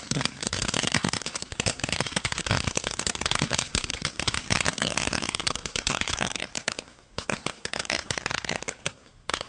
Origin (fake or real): fake